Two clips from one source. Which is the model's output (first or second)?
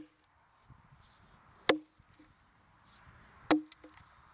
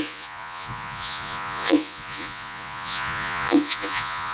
second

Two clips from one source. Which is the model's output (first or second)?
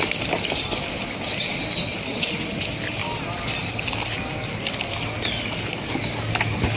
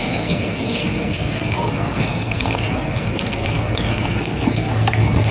second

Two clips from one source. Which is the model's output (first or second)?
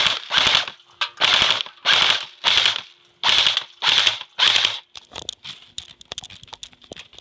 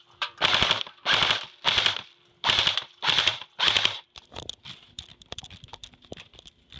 second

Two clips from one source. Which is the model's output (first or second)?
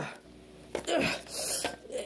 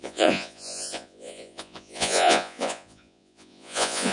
second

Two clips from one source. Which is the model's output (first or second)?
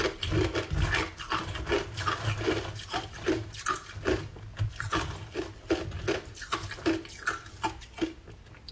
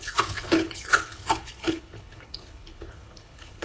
second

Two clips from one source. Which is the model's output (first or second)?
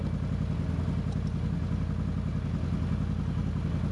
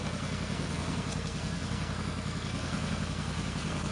second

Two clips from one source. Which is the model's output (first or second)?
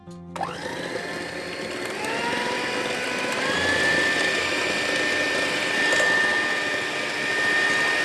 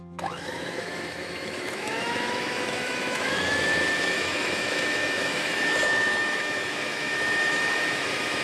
second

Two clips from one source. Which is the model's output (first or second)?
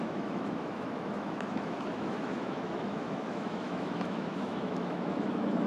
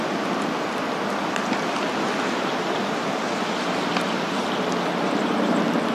first